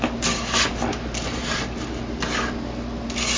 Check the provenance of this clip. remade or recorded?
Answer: recorded